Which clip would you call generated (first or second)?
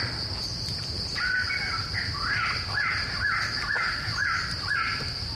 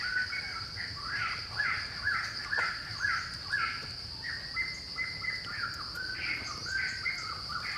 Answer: first